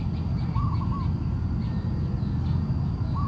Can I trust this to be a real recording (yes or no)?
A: yes